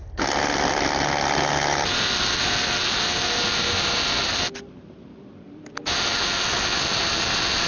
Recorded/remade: recorded